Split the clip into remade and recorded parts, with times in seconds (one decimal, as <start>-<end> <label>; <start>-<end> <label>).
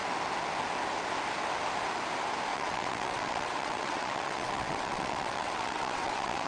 0.0-2.5 recorded; 2.5-6.5 remade